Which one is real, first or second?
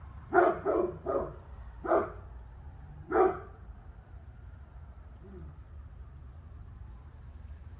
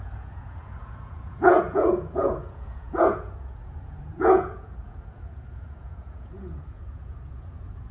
first